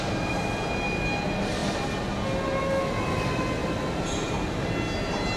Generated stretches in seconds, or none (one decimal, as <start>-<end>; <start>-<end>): 3.6-4.3